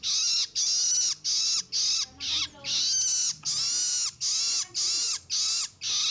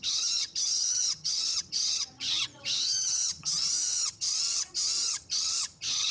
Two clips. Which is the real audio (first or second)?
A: first